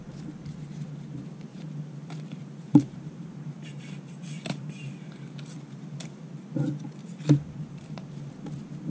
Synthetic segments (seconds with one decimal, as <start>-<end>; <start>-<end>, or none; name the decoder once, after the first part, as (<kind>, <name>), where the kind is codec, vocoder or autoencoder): 1.5-4.9 (vocoder, BigVGAN v2); 7.0-8.3